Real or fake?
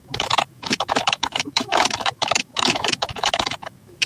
fake